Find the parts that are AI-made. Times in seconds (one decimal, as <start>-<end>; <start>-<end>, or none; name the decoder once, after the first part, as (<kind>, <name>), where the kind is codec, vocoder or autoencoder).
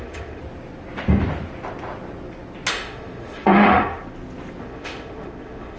0.0-0.4 (autoencoder, DAC-VAE); 2.7-4.0; 4.6-5.8